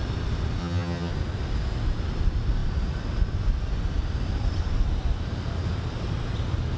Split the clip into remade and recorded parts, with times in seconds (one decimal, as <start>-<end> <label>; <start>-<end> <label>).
0.0-0.6 recorded; 0.6-1.1 remade; 1.1-6.8 recorded